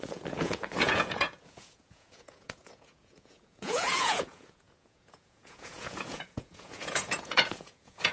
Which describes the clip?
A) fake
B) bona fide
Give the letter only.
A